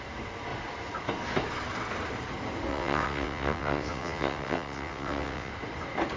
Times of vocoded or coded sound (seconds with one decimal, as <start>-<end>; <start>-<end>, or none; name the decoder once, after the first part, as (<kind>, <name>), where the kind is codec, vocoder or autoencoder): 2.7-5.5 (vocoder, WaveNeXt)